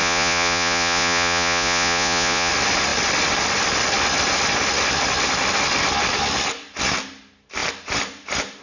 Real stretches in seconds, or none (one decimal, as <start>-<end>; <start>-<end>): 2.5-8.6